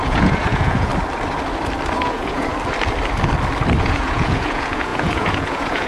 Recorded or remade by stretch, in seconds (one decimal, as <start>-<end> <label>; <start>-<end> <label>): 0.0-0.9 remade; 0.9-2.0 recorded; 2.0-2.5 remade; 2.5-3.8 recorded; 3.8-5.9 remade